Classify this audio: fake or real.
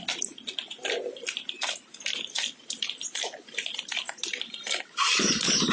real